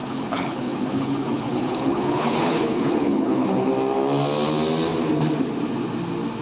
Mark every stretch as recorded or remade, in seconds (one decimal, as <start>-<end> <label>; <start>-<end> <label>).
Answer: 0.0-3.7 remade; 3.7-6.4 recorded